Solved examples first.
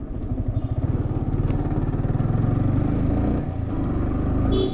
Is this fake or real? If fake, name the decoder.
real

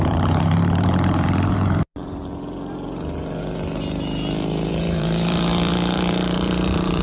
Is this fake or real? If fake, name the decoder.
fake, vocoder, BigVGAN v2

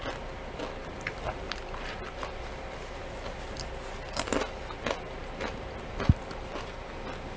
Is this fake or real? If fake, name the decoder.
real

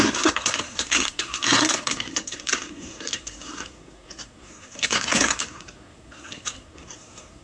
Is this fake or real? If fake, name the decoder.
fake, codec, SNAC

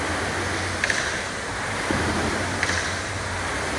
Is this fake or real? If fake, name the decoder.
real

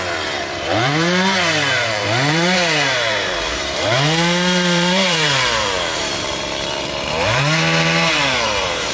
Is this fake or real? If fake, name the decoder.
fake, vocoder, BigVGAN v2